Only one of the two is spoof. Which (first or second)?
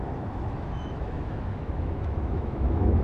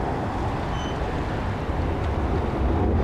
first